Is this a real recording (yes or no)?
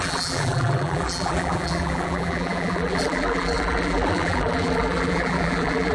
no